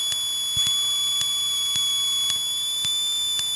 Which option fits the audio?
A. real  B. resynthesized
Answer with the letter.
A